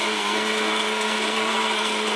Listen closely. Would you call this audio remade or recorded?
remade